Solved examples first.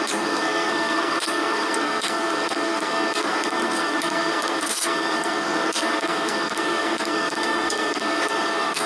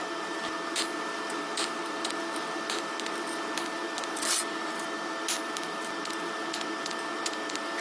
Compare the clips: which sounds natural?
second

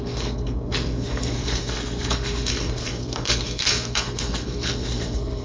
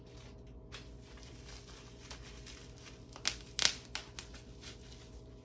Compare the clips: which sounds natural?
second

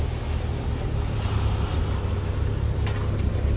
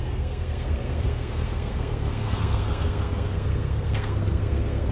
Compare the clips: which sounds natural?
first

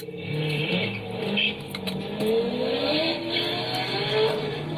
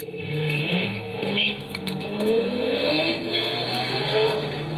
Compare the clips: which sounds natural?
first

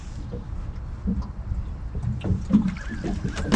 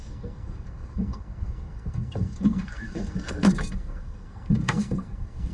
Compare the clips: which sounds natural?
first